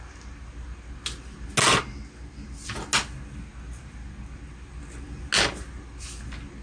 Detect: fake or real real